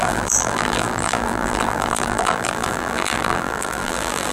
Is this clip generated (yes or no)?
yes